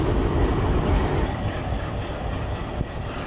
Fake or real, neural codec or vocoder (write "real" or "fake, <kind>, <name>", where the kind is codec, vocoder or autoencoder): real